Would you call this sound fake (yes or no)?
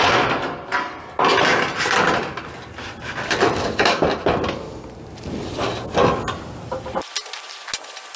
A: no